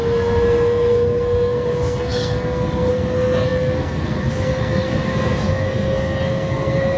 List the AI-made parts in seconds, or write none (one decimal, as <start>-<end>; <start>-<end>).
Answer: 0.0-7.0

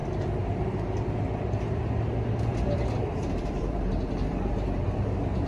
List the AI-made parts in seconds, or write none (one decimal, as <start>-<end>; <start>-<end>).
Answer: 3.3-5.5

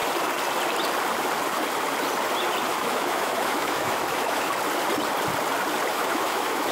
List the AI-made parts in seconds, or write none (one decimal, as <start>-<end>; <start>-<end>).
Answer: 2.7-4.5; 5.9-6.7

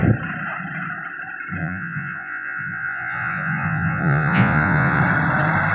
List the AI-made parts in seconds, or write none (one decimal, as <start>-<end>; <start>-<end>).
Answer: 1.6-5.0

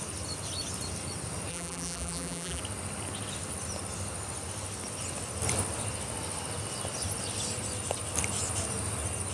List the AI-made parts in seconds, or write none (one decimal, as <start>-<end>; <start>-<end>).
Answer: 1.5-2.6

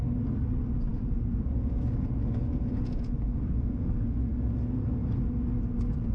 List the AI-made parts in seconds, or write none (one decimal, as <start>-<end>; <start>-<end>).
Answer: 0.9-4.3